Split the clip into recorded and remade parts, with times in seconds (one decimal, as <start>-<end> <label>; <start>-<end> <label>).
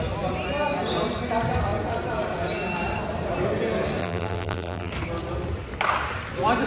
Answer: 0.0-4.0 recorded; 4.0-4.9 remade; 4.9-6.7 recorded